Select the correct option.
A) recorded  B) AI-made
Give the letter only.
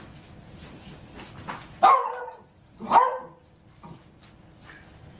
A